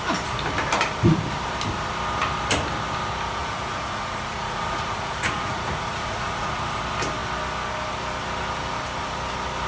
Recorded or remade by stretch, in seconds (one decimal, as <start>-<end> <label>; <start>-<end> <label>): 0.0-3.4 recorded; 3.4-6.8 remade; 6.8-9.7 recorded